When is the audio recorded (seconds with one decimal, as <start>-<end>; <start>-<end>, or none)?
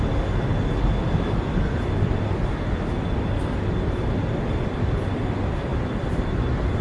0.0-6.8